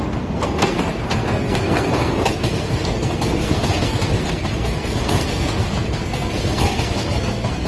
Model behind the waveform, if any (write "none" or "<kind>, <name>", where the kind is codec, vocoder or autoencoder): codec, SNAC